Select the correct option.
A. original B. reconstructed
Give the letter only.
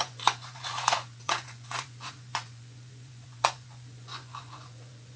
B